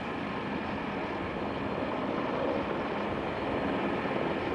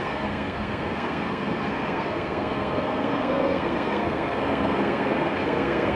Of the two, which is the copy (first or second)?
second